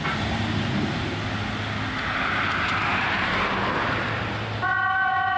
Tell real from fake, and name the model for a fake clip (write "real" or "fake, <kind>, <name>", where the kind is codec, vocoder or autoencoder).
real